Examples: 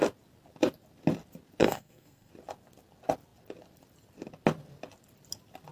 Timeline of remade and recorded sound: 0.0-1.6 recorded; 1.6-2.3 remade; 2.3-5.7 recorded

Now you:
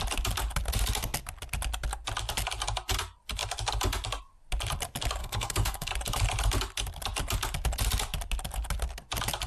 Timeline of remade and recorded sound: 0.0-5.2 recorded; 5.2-5.9 remade; 5.9-9.5 recorded

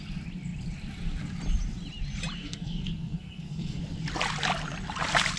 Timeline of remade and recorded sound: 0.0-2.4 recorded; 2.4-3.8 remade; 3.8-5.4 recorded

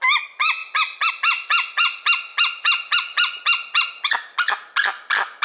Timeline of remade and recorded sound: 0.0-5.4 recorded

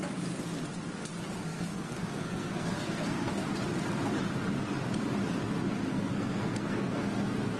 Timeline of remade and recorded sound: 0.0-1.5 recorded; 1.5-3.3 remade; 3.3-5.9 recorded; 5.9-7.6 remade